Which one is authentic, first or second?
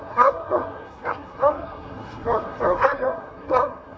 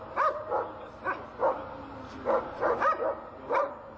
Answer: second